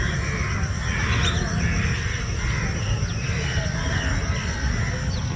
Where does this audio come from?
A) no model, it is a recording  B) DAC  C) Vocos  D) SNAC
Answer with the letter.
A